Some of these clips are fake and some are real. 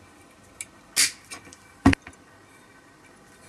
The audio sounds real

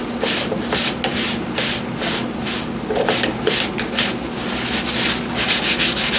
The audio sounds real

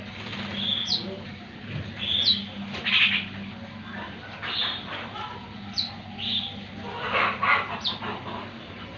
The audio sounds real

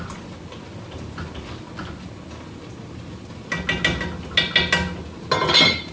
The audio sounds real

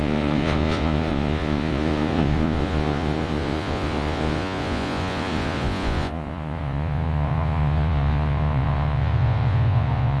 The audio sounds fake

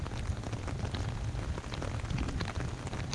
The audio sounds real